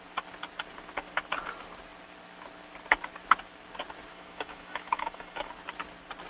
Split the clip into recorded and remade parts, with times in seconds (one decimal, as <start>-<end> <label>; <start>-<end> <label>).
0.0-4.1 recorded; 4.1-5.5 remade; 5.5-6.3 recorded